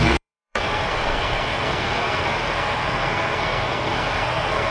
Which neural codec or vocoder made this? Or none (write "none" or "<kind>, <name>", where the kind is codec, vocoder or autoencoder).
codec, SNAC